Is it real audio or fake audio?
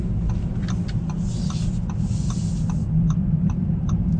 real